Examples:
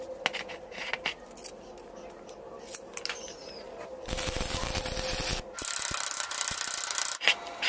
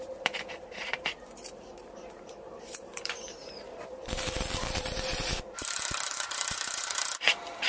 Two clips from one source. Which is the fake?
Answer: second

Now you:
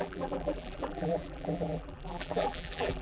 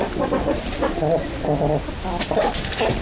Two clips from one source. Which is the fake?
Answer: first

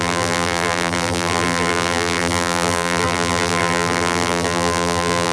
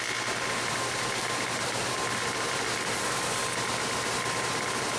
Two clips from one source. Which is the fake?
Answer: first